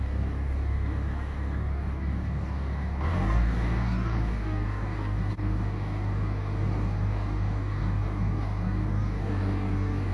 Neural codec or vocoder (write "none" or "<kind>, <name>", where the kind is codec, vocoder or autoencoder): codec, DAC